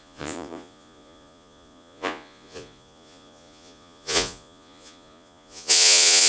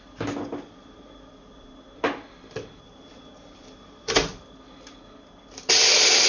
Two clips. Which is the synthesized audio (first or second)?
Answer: first